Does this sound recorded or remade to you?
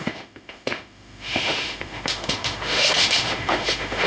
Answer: remade